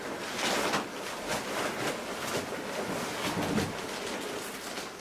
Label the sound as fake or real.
real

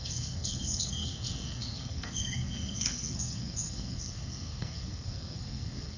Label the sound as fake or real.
fake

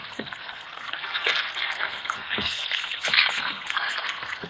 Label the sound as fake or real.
fake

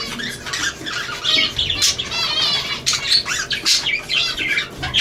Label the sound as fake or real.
real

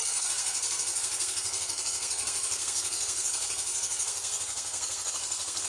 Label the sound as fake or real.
fake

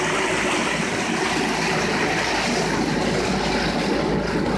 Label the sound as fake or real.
real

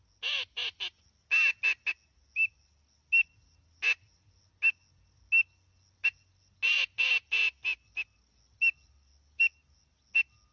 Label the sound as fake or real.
real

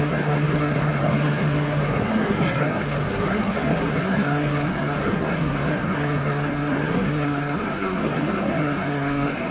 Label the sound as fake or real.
fake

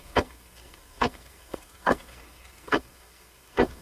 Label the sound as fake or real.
fake